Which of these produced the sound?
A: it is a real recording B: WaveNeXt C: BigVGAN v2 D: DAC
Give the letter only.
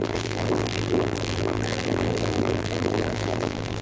C